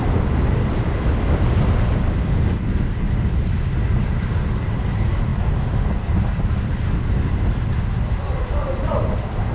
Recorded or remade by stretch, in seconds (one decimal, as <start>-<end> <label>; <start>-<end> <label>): 0.0-9.5 recorded